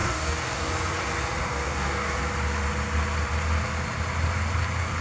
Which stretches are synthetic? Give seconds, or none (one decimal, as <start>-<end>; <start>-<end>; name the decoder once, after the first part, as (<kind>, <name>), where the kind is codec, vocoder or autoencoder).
0.0-0.7 (codec, DAC); 1.4-2.2